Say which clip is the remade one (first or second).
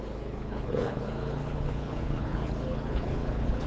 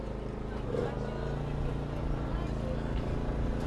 first